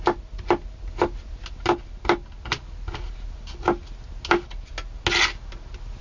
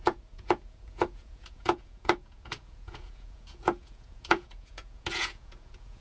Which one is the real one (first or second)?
first